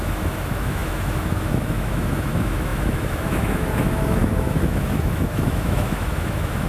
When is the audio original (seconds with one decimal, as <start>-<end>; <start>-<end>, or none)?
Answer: none